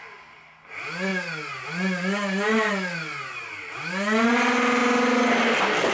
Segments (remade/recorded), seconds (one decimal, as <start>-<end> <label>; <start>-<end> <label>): 0.0-5.9 recorded